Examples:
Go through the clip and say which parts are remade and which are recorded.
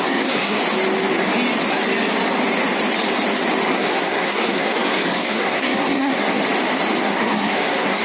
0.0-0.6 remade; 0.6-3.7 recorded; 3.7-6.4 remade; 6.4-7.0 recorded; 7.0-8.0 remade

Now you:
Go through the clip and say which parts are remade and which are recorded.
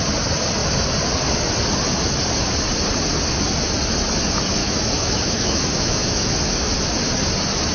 0.0-4.6 recorded; 4.6-6.7 remade; 6.7-7.7 recorded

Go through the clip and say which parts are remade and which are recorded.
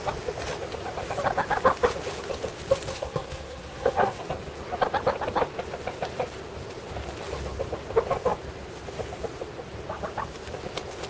0.0-2.9 recorded; 2.9-4.2 remade; 4.2-11.1 recorded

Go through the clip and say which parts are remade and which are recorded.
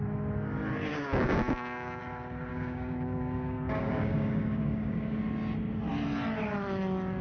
0.0-0.9 recorded; 0.9-2.0 remade; 2.0-2.5 recorded; 2.5-5.2 remade; 5.2-7.2 recorded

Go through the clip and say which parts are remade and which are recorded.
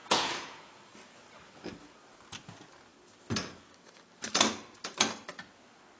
0.0-0.7 remade; 0.7-6.0 recorded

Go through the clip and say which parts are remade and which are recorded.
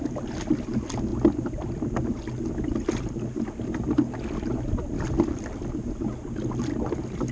0.0-7.3 recorded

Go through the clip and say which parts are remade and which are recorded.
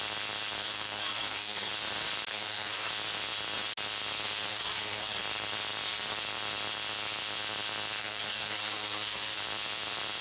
0.0-0.6 recorded; 0.6-1.7 remade; 1.7-2.3 recorded; 2.3-2.9 remade; 2.9-4.5 recorded; 4.5-5.2 remade; 5.2-8.0 recorded; 8.0-9.4 remade; 9.4-10.2 recorded